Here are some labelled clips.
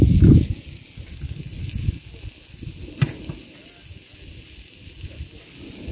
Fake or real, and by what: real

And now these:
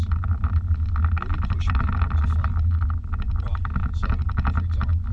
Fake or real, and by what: real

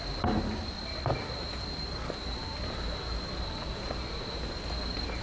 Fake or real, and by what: real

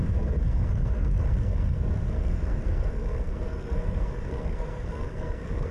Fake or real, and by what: fake, codec, SNAC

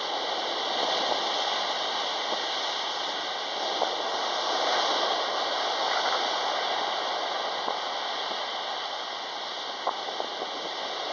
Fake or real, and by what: real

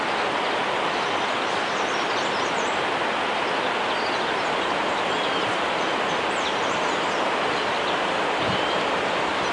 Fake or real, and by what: real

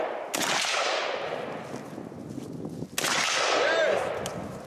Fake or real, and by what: real